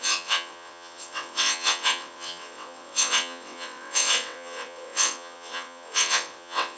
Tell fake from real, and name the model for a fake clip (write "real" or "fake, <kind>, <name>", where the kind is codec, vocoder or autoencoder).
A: fake, vocoder, WaveNeXt